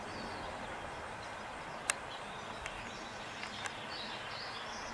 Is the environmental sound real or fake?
real